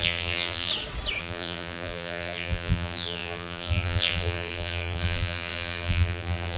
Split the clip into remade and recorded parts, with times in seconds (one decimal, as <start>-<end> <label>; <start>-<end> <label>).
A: 0.0-0.7 remade; 0.7-1.2 recorded; 1.2-6.6 remade